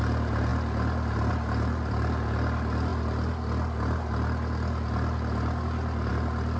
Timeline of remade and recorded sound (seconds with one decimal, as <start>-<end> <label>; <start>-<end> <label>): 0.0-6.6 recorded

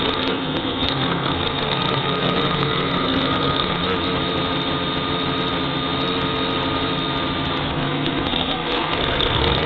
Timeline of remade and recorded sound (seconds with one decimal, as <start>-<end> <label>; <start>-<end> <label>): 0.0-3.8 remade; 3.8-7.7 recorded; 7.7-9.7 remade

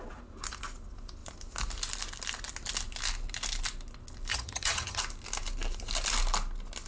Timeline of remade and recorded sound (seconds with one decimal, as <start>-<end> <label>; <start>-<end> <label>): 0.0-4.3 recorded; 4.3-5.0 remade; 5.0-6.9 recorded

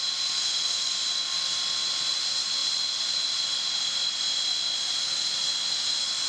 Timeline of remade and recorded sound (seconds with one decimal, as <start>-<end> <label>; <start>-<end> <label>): 0.0-6.3 recorded

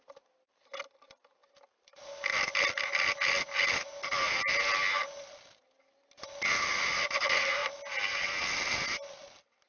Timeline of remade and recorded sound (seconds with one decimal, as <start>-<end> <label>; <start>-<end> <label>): 0.0-9.7 recorded

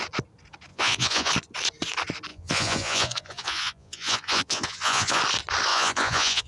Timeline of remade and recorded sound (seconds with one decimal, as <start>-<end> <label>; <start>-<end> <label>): 0.0-0.7 recorded; 0.7-1.3 remade; 1.3-2.3 recorded; 2.3-5.2 remade; 5.2-5.7 recorded; 5.7-6.5 remade